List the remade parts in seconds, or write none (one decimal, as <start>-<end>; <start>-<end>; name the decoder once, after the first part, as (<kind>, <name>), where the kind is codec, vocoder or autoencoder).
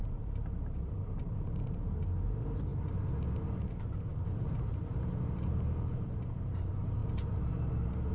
0.0-2.7 (vocoder, BigVGAN v2); 3.4-8.1